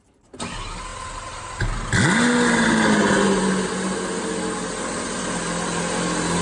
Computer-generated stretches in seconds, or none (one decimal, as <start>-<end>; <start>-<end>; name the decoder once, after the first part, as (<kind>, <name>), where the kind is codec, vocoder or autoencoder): none